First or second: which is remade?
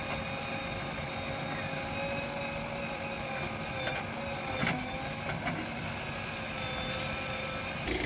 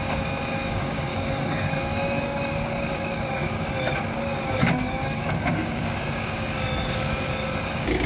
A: second